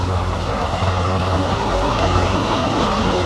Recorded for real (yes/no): no